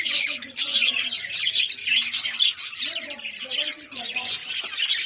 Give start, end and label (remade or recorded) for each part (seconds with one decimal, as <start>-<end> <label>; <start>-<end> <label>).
0.0-1.8 remade; 1.8-4.0 recorded; 4.0-4.4 remade; 4.4-5.1 recorded